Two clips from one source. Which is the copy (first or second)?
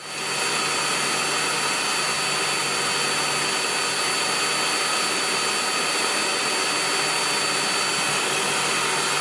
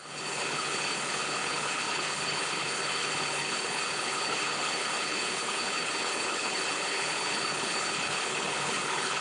second